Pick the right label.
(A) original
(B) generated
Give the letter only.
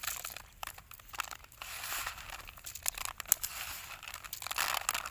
A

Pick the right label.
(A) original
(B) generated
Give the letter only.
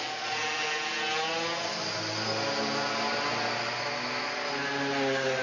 A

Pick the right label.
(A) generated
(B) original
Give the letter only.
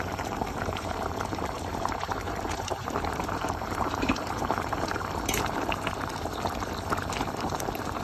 A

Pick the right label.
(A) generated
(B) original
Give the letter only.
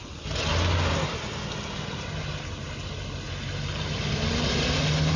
B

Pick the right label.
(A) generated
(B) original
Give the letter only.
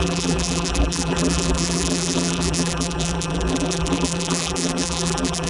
A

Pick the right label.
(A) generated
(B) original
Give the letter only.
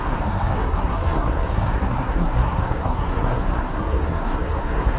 A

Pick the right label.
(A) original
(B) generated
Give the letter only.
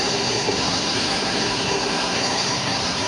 B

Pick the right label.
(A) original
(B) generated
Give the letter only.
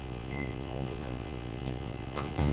B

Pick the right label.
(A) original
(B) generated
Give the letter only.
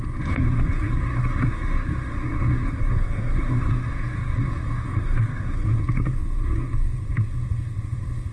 B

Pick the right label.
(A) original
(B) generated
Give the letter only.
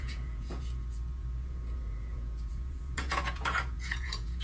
B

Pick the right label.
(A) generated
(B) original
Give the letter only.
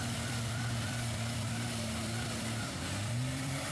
A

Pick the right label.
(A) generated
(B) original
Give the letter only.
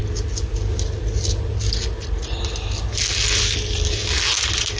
B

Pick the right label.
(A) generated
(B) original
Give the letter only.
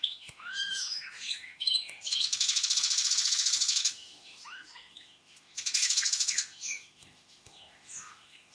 A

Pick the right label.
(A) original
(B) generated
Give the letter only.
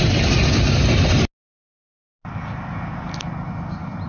A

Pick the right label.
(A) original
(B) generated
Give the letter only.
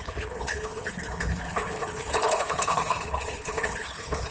B